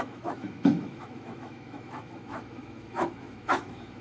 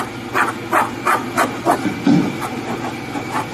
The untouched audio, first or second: second